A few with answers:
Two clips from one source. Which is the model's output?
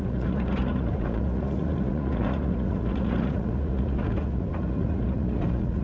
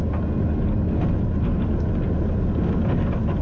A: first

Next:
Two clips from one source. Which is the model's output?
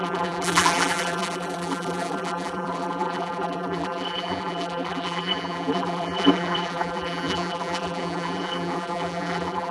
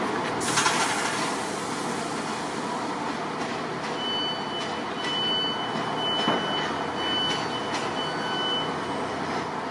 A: first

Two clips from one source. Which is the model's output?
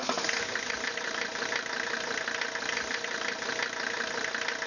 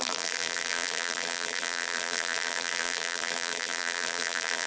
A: second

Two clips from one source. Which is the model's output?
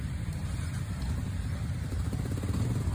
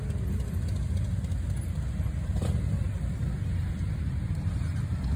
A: first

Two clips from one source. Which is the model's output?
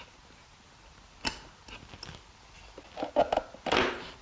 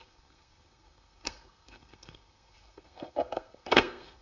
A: second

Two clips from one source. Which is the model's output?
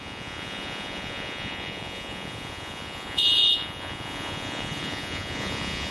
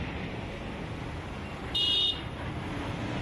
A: first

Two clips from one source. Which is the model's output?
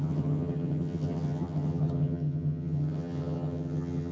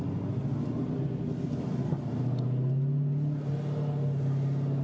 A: first